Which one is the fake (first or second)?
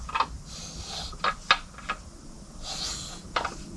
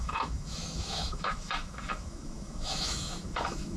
second